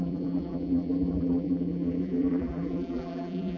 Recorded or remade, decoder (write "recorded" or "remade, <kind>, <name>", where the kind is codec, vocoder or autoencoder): remade, vocoder, BigVGAN v2